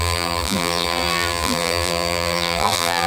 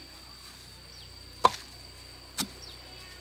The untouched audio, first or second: second